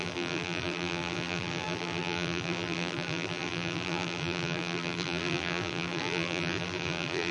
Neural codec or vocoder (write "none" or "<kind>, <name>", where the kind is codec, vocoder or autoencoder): vocoder, BigVGAN v2